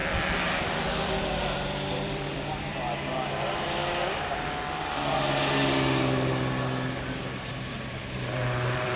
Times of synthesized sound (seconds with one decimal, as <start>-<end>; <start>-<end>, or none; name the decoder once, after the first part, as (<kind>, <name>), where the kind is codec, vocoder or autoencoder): 0.0-3.8 (vocoder, BigVGAN v2); 7.5-9.0